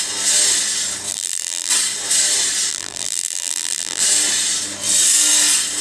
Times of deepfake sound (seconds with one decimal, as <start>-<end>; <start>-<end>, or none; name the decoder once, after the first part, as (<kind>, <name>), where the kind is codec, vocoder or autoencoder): 1.1-1.7 (vocoder, BigVGAN v2); 2.7-4.0